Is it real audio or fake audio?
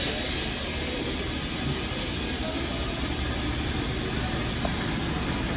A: real